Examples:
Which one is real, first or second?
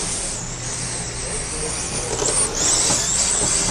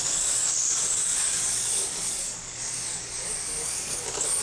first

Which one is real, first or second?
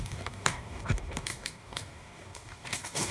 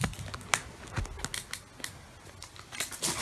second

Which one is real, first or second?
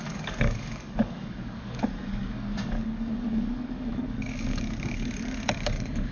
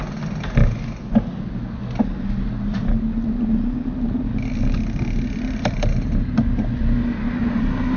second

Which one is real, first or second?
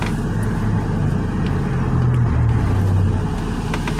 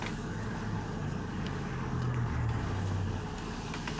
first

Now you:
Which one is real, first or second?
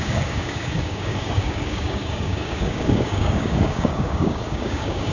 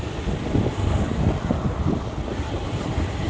second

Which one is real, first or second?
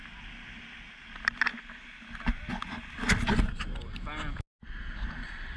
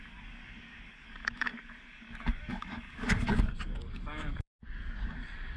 first